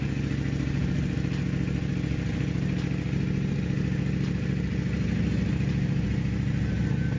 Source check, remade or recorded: recorded